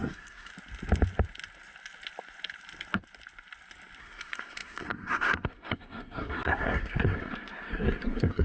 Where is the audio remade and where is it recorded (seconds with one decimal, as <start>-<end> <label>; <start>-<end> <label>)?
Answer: 0.0-0.5 remade; 0.5-4.0 recorded; 4.0-8.4 remade